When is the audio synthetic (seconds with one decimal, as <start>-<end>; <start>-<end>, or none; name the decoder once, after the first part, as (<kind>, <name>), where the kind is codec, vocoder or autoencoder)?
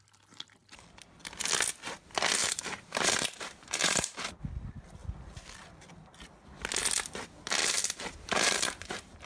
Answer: 2.4-4.4 (vocoder, BigVGAN v2); 7.6-9.3